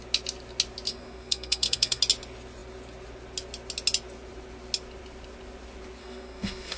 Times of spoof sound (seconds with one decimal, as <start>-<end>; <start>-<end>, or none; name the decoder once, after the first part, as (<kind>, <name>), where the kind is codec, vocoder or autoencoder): 0.9-2.0 (codec, SNAC); 6.0-6.8